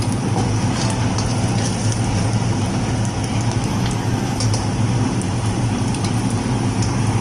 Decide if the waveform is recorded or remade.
recorded